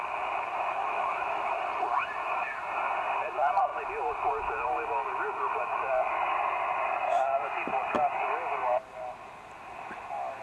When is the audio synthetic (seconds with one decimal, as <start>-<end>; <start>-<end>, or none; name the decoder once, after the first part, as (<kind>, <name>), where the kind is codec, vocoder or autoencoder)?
0.8-1.5 (autoencoder, DAC-VAE)